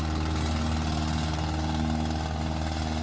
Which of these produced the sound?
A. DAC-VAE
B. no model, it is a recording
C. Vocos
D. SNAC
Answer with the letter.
B